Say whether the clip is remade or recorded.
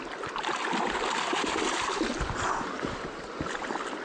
recorded